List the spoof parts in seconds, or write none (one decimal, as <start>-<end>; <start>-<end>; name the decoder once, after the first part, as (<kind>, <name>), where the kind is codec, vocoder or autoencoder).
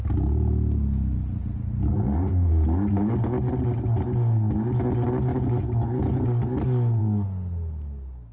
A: 1.9-2.5 (codec, SNAC)